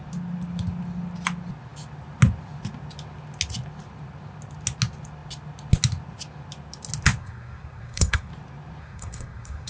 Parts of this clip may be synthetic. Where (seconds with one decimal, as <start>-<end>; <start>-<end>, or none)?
7.2-8.3; 8.8-9.7